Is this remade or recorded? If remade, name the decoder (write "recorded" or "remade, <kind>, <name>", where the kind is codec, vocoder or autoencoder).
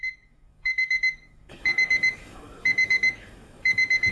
remade, codec, DAC